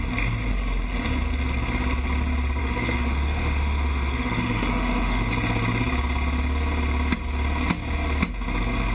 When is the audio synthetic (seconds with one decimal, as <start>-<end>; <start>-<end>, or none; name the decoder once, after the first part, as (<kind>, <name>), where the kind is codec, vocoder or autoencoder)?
2.6-5.3 (autoencoder, DAC-VAE)